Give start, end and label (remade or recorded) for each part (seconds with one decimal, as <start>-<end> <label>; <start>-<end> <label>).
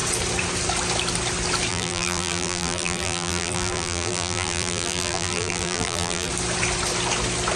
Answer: 0.0-1.7 recorded; 1.7-6.3 remade; 6.3-7.6 recorded